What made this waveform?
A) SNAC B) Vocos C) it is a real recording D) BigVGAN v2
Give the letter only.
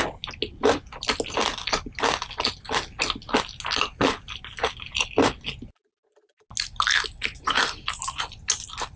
C